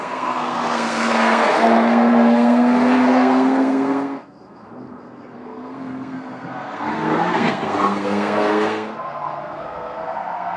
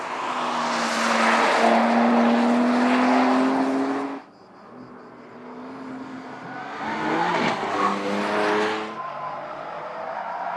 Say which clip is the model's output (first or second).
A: first